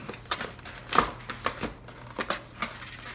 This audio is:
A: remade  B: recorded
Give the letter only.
B